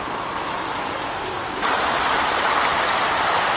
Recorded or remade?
recorded